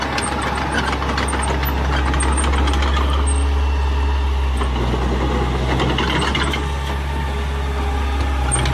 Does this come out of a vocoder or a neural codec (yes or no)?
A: no